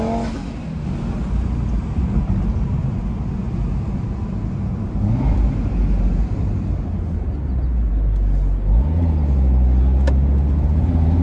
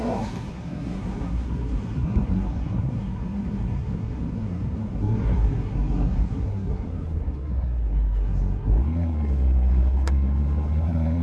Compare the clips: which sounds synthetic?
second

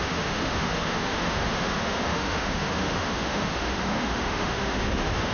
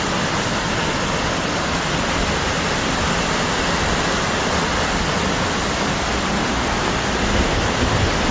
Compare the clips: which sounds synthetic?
first